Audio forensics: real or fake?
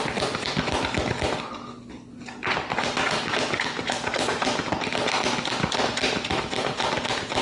real